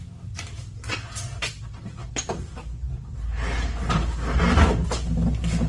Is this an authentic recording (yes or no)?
yes